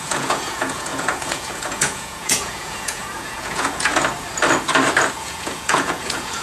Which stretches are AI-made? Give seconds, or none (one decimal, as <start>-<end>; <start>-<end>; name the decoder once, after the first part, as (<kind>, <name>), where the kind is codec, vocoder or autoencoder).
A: 0.0-3.9 (vocoder, Vocos); 5.2-6.4